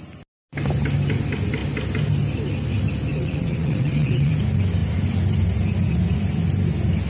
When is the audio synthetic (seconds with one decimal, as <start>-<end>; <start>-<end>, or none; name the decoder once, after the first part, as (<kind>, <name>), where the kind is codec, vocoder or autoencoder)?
3.1-4.3 (vocoder, WaveNeXt)